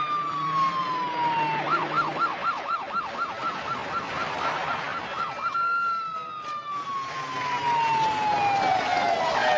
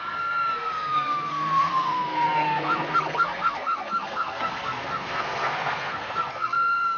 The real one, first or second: first